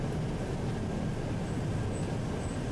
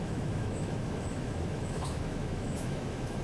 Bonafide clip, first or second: first